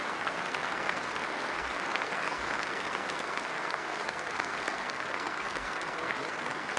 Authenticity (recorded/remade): remade